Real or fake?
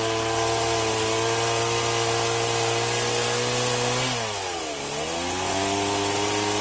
real